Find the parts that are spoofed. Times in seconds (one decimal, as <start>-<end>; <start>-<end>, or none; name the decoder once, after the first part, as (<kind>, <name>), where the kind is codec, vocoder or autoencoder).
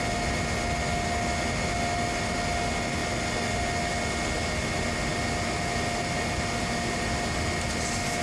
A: none